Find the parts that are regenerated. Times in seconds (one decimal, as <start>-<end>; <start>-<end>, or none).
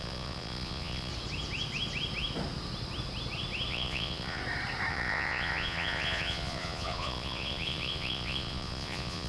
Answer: 0.0-1.1; 3.7-4.4; 4.9-9.3